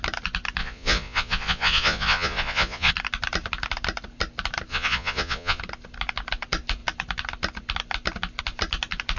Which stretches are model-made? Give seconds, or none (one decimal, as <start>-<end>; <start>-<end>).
0.6-2.9; 4.7-5.6